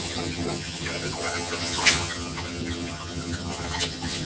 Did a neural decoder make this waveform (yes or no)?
yes